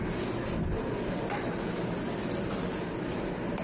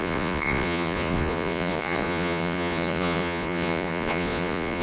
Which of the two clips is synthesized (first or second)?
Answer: second